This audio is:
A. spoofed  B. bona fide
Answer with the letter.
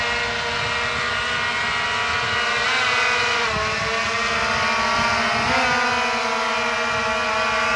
B